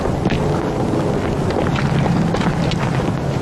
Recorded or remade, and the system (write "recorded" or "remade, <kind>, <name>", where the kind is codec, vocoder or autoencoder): recorded